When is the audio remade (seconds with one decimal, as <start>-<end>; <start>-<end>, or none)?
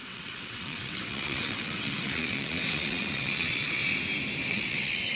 0.0-3.8; 4.5-5.2